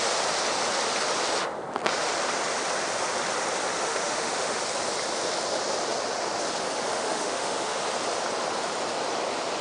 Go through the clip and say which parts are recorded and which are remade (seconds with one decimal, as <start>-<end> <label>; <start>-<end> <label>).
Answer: 0.0-3.9 recorded; 3.9-4.6 remade; 4.6-7.0 recorded; 7.0-7.8 remade; 7.8-9.6 recorded

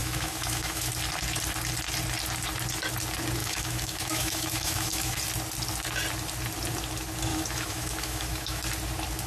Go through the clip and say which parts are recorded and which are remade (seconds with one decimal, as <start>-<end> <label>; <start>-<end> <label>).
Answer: 0.0-0.9 remade; 0.9-3.4 recorded; 3.4-5.2 remade; 5.2-7.3 recorded; 7.3-8.6 remade; 8.6-9.3 recorded

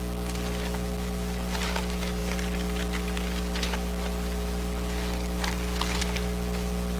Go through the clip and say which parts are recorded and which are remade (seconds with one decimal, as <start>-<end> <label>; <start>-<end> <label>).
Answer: 0.0-7.0 recorded

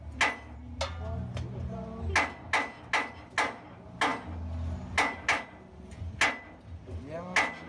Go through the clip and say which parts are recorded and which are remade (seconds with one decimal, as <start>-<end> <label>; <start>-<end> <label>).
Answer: 0.0-7.7 recorded